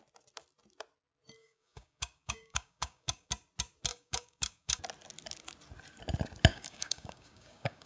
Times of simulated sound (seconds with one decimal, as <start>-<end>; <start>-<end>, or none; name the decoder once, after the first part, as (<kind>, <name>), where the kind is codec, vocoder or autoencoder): 1.4-3.3 (codec, DAC); 3.9-4.8; 6.5-7.9